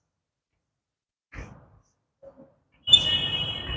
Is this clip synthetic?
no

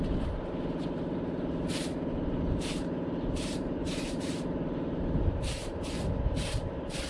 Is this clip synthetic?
yes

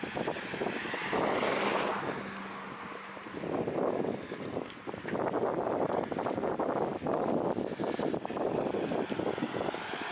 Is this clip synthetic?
no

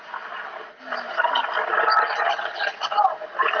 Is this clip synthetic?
no